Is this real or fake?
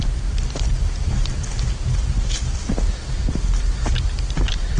real